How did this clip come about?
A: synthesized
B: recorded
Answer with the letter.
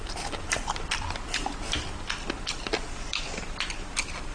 B